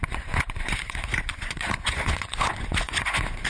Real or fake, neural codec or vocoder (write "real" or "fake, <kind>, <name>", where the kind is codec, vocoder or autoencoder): fake, vocoder, Vocos